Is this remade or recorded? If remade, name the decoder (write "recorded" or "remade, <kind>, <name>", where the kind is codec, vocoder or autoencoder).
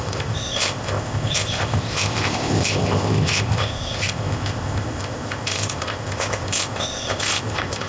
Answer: remade, codec, ZipCodec